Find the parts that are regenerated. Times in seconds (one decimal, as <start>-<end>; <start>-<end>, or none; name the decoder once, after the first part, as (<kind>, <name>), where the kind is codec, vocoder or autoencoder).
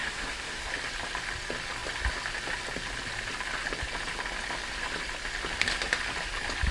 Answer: 0.0-0.7 (codec, SNAC)